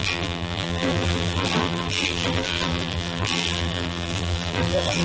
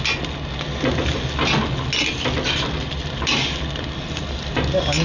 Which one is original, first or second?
second